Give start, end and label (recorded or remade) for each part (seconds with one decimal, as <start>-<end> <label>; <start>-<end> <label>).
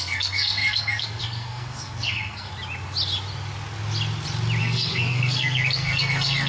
0.0-2.5 remade; 2.5-4.6 recorded; 4.6-6.5 remade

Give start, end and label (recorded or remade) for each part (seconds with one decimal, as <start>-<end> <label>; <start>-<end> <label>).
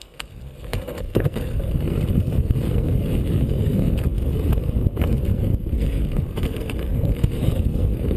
0.0-8.2 remade